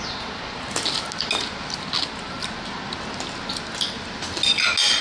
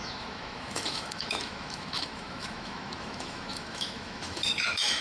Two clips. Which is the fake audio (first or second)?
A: second